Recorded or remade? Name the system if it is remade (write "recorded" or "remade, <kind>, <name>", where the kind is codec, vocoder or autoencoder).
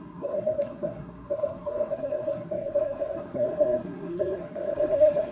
remade, codec, SNAC